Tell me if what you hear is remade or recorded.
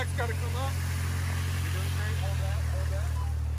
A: recorded